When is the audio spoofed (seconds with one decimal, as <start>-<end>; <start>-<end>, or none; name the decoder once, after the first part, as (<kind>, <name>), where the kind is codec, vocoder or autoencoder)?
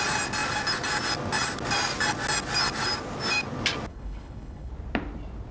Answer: 3.9-4.7 (codec, HILCodec)